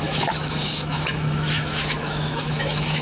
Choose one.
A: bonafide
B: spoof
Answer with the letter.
B